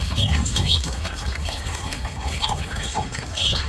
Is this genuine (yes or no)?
no